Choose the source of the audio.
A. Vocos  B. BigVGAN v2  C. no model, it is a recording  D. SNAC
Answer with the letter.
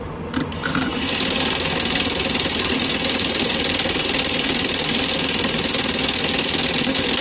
C